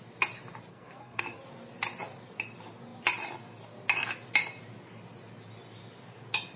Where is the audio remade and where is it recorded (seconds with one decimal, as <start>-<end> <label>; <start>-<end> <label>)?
0.0-0.7 recorded; 0.7-1.4 remade; 1.4-6.6 recorded